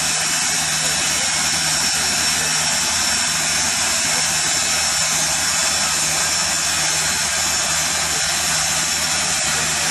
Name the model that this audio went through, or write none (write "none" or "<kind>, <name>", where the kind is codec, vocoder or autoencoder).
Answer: none